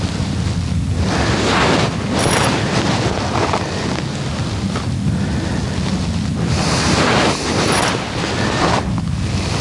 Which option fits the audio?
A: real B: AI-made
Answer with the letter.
A